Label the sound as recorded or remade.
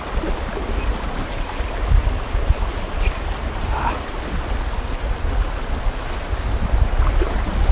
recorded